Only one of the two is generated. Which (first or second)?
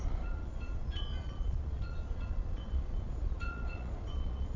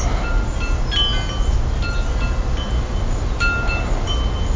first